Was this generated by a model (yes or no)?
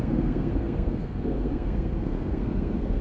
yes